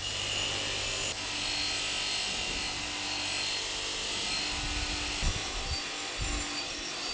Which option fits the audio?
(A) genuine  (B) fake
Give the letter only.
A